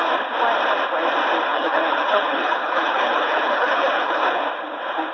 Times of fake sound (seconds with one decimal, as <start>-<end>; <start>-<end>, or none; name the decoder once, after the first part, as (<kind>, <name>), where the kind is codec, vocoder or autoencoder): 1.5-4.4 (codec, HILCodec)